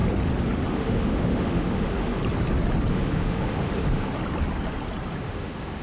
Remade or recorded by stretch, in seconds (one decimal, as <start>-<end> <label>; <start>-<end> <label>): 0.0-0.7 recorded; 0.7-2.2 remade; 2.2-2.9 recorded; 2.9-4.1 remade; 4.1-5.2 recorded; 5.2-5.8 remade

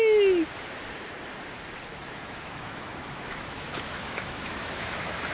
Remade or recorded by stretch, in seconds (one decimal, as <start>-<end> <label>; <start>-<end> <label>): 0.0-1.9 recorded; 1.9-5.3 remade